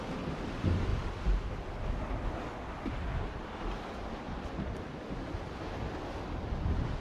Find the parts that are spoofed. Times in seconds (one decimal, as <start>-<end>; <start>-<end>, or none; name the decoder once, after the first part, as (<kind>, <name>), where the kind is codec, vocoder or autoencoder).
none